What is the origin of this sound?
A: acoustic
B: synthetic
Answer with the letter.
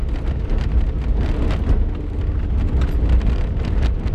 A